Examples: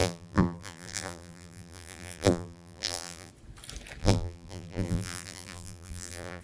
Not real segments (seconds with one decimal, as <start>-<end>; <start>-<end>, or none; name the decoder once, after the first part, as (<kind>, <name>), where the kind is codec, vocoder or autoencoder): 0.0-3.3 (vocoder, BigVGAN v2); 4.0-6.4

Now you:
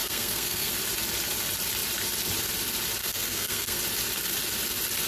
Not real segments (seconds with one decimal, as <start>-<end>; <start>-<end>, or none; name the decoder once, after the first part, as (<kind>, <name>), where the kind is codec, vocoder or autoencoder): 0.0-0.7 (codec, SNAC); 3.0-3.8

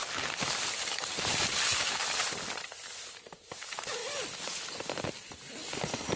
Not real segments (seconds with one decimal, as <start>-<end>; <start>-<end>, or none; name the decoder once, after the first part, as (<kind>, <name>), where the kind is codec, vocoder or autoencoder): 0.0-4.0 (vocoder, BigVGAN v2)